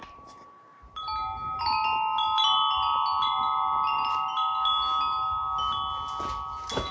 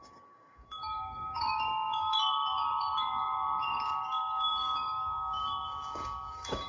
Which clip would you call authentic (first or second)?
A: first